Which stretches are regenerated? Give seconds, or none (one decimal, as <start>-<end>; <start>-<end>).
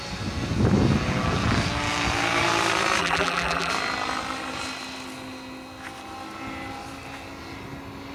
3.0-3.7